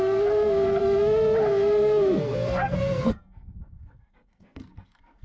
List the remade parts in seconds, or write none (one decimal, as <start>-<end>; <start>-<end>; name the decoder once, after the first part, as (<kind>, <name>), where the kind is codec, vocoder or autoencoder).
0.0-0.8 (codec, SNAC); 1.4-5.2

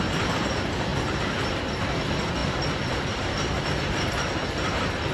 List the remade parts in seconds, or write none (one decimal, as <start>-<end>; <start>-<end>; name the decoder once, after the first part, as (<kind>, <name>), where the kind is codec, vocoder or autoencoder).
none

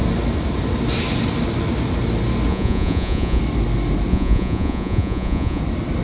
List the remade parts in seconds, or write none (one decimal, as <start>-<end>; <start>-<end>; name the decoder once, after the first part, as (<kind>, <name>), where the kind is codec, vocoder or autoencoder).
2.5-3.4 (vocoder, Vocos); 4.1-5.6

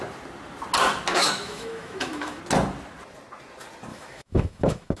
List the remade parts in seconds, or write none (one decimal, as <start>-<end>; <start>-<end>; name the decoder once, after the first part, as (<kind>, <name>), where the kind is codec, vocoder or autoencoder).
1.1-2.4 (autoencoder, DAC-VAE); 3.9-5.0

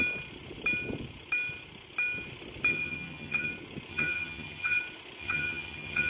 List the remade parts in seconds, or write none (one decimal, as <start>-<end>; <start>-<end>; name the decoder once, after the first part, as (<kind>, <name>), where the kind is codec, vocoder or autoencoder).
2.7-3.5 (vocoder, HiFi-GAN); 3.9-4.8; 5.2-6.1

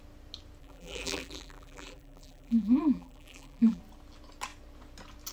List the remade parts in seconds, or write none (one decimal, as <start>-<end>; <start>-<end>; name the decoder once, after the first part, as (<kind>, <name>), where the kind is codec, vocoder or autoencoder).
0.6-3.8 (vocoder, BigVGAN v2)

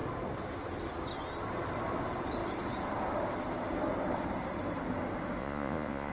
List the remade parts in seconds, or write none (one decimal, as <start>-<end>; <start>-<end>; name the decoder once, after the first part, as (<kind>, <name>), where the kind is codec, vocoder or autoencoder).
5.4-6.1 (vocoder, Vocos)

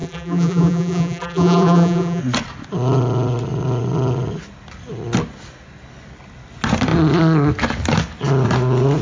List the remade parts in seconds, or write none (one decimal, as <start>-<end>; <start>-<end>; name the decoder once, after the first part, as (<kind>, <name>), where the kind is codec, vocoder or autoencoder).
0.0-2.2 (vocoder, BigVGAN v2)